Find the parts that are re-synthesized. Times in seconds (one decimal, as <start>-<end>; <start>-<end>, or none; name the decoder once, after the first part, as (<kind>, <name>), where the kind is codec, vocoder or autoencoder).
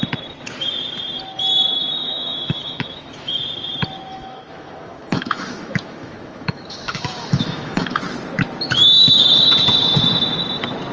2.0-3.4 (autoencoder, DAC-VAE); 4.1-8.0